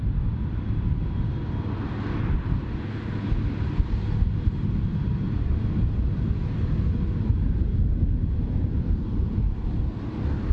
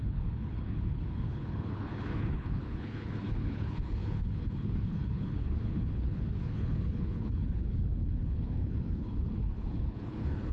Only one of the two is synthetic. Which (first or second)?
second